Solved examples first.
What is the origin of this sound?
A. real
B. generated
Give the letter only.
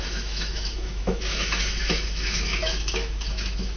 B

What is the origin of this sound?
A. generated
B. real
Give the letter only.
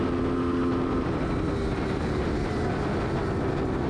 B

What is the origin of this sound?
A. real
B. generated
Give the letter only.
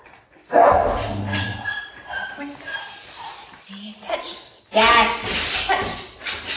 A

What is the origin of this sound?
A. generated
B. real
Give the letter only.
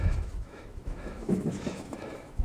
A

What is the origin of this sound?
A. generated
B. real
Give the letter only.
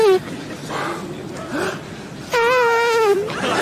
B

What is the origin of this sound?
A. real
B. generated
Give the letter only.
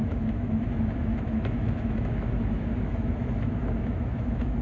B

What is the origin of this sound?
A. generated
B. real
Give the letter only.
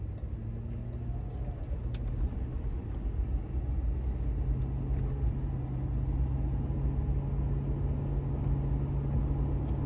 B